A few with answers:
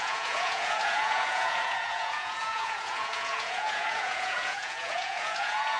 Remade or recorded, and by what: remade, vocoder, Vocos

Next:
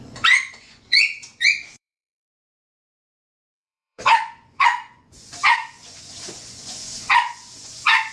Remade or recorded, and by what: remade, vocoder, Vocos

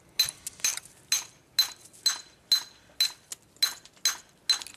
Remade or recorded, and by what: recorded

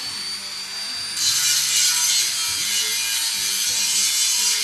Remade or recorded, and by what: recorded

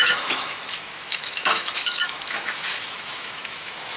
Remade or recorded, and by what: remade, autoencoder, DAC-VAE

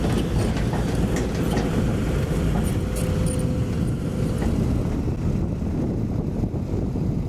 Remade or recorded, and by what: recorded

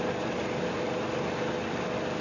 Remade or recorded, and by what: recorded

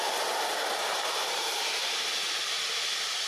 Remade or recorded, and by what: recorded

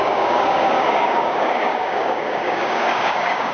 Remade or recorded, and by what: remade, codec, DAC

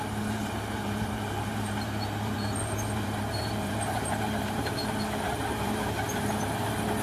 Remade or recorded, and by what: remade, vocoder, BigVGAN v2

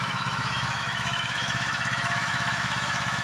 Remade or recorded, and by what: remade, autoencoder, DAC-VAE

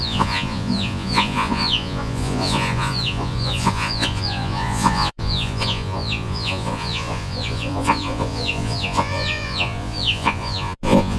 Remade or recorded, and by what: remade, vocoder, Vocos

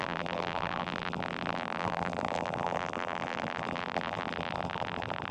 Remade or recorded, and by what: remade, vocoder, BigVGAN v2